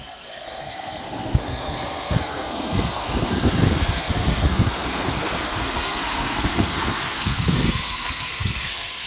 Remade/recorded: remade